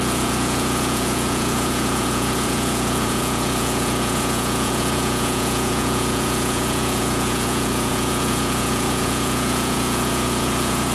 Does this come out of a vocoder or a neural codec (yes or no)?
yes